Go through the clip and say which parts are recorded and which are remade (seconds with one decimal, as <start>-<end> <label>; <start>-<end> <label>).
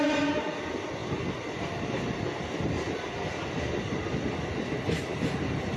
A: 0.0-5.8 recorded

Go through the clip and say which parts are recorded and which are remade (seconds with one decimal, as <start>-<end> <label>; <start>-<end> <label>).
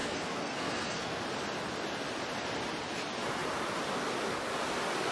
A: 0.0-1.2 remade; 1.2-5.1 recorded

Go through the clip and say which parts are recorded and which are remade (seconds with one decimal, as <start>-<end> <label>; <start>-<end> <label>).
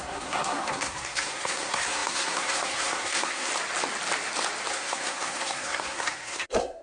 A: 0.0-3.5 remade; 3.5-4.7 recorded; 4.7-6.8 remade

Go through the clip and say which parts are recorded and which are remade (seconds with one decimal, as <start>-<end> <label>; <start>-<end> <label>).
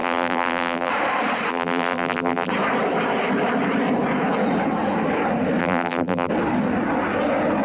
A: 0.0-0.9 remade; 0.9-1.5 recorded; 1.5-2.5 remade; 2.5-5.6 recorded; 5.6-6.3 remade; 6.3-7.6 recorded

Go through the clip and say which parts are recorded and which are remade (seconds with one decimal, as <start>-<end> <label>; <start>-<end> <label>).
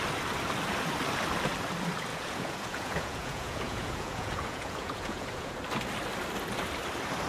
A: 0.0-2.1 recorded; 2.1-5.5 remade; 5.5-7.3 recorded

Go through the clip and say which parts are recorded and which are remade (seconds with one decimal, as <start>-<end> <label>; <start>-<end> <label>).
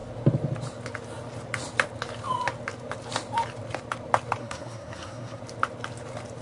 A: 0.0-4.4 recorded; 4.4-5.4 remade; 5.4-6.4 recorded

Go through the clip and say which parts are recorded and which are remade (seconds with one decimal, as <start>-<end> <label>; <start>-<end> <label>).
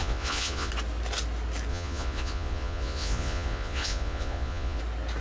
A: 0.0-0.7 remade; 0.7-1.7 recorded; 1.7-4.8 remade; 4.8-5.2 recorded